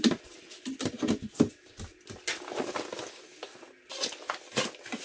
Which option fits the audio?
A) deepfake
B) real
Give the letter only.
B